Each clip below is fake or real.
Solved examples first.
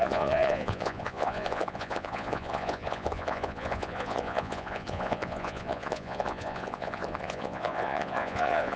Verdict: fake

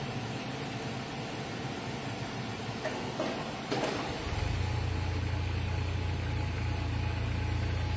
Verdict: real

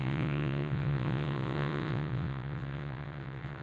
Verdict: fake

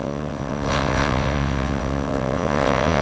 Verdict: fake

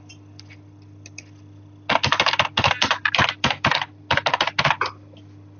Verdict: real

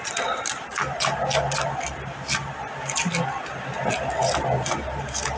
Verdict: real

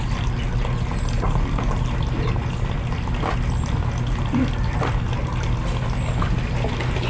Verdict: real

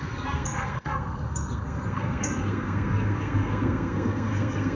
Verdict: fake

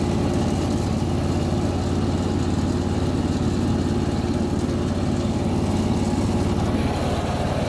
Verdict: real